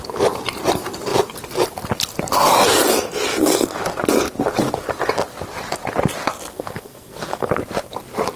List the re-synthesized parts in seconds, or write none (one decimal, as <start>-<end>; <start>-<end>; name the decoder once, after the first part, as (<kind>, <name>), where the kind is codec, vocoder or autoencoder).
3.3-3.8 (codec, SNAC); 6.5-7.5